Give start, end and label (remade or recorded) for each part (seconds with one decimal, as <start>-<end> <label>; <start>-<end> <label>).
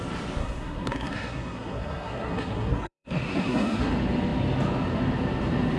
0.0-0.4 recorded; 0.4-3.9 remade; 3.9-5.8 recorded